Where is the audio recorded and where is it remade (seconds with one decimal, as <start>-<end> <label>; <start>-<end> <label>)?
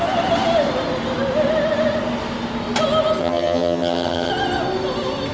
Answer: 0.0-3.2 recorded; 3.2-4.3 remade; 4.3-5.3 recorded